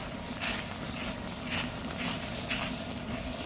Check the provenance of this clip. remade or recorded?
recorded